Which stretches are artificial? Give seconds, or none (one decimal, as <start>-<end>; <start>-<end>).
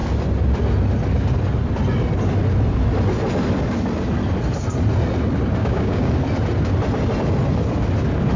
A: 5.6-6.1